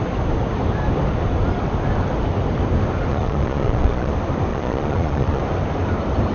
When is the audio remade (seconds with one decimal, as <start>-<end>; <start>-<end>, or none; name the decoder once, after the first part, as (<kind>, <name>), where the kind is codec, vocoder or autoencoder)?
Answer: 3.1-4.1 (vocoder, Vocos); 4.5-5.4